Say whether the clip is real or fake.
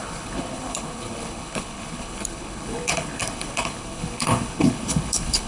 fake